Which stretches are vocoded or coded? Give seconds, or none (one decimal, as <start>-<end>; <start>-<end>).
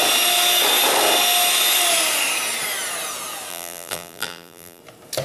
3.5-4.8